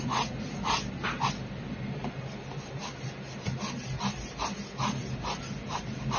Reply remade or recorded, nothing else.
recorded